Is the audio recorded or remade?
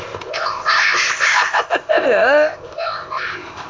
remade